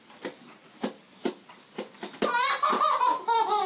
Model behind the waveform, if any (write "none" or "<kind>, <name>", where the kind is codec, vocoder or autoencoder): none